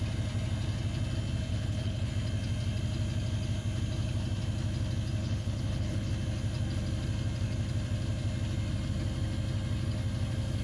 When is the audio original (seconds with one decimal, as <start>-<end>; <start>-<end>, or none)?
0.0-1.5; 2.1-5.2; 6.1-10.6